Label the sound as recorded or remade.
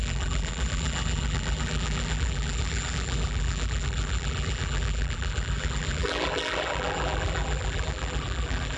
remade